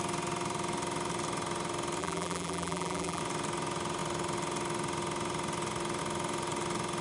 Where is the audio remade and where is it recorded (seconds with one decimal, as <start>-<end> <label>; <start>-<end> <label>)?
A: 0.0-2.0 recorded; 2.0-3.2 remade; 3.2-7.0 recorded